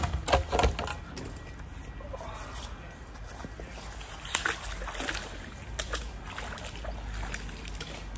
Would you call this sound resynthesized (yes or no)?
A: no